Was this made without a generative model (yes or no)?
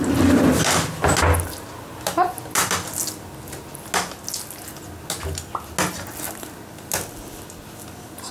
yes